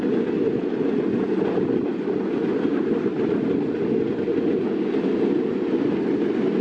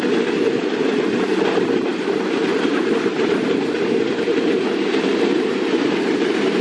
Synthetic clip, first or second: second